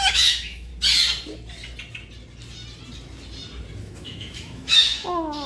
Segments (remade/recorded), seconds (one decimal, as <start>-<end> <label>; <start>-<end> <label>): 0.0-0.7 remade; 0.7-3.8 recorded; 3.8-5.5 remade